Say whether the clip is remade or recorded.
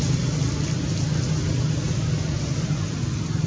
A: recorded